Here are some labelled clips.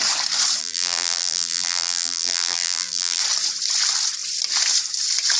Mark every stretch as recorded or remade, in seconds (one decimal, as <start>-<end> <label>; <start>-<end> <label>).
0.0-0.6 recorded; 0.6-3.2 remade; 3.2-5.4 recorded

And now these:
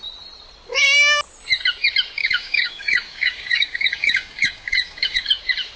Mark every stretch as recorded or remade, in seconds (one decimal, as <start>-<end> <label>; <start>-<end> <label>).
0.0-2.2 recorded; 2.2-5.3 remade; 5.3-5.8 recorded

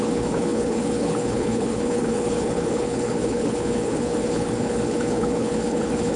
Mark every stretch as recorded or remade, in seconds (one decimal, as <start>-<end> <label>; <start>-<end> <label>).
0.0-6.2 remade

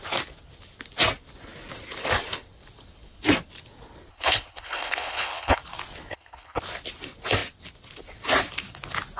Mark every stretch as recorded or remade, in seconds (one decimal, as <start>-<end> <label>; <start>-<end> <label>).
0.0-4.1 recorded; 4.1-5.6 remade; 5.6-6.1 recorded; 6.1-6.6 remade; 6.6-9.2 recorded

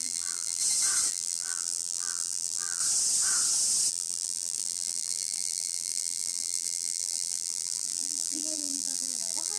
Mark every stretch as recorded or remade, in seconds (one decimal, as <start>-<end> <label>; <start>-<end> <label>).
0.0-0.6 remade; 0.6-1.1 recorded; 1.1-2.8 remade; 2.8-3.9 recorded; 3.9-9.6 remade

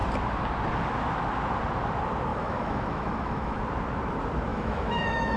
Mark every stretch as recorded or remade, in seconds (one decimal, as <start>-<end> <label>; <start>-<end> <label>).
0.0-2.3 recorded; 2.3-3.6 remade; 3.6-4.5 recorded; 4.5-5.4 remade